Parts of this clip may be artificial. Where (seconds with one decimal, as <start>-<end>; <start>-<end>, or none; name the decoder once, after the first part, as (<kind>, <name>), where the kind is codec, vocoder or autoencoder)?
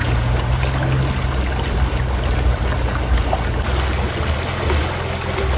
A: 0.0-0.5 (vocoder, Vocos)